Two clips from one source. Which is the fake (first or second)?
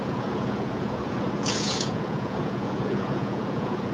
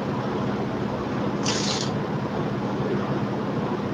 first